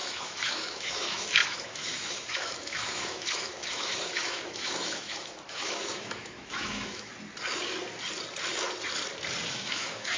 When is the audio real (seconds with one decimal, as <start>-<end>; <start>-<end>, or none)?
7.1-9.5